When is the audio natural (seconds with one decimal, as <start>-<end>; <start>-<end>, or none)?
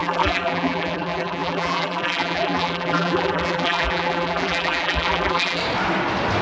5.6-6.4